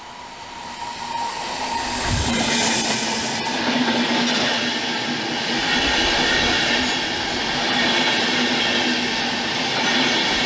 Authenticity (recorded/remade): recorded